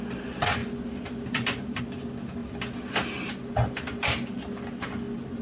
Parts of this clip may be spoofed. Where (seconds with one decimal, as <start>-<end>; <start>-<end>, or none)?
none